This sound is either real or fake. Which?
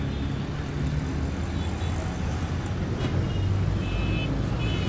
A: real